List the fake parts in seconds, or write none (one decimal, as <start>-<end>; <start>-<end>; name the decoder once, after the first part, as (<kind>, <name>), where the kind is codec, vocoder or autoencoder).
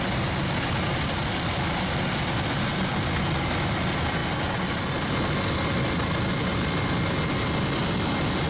4.2-5.1 (vocoder, BigVGAN v2)